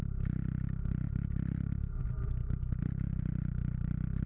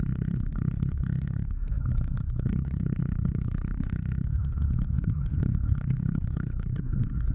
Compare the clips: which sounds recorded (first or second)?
first